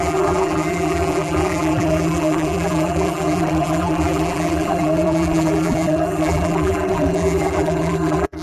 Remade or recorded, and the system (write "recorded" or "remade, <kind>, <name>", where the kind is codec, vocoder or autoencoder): remade, vocoder, BigVGAN v2